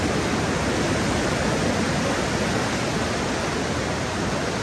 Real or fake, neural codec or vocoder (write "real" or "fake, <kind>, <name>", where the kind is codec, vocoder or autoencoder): real